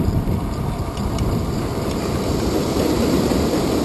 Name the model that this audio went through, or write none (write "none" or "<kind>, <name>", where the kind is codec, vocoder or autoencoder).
vocoder, BigVGAN v2